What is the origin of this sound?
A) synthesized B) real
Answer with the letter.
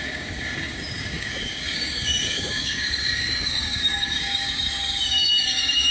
A